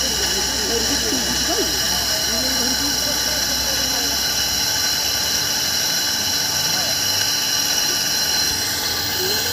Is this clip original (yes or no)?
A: yes